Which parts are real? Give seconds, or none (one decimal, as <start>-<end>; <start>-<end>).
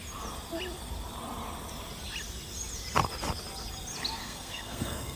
0.0-4.2